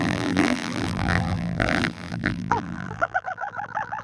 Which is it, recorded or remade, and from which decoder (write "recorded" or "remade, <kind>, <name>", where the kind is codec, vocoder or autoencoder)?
remade, vocoder, BigVGAN v2